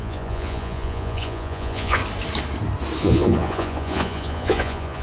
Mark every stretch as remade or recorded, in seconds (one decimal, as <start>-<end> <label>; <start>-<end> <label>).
0.0-2.0 remade; 2.0-3.0 recorded; 3.0-5.0 remade